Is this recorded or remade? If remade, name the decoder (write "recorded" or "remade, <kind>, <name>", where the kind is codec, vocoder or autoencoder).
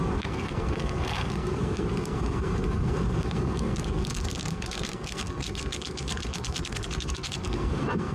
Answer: remade, codec, SNAC